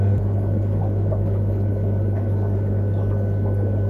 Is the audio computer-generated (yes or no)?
yes